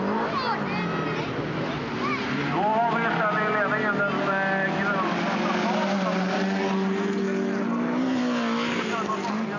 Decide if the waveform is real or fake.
real